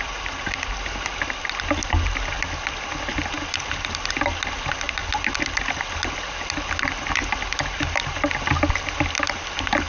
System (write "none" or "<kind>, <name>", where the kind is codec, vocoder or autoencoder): none